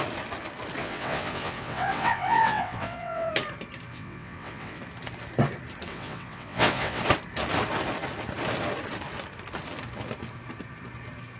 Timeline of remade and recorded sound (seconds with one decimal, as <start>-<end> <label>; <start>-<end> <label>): 0.0-0.8 recorded; 0.8-3.3 remade; 3.3-3.9 recorded; 3.9-4.8 remade; 4.8-5.9 recorded; 5.9-7.0 remade; 7.0-11.4 recorded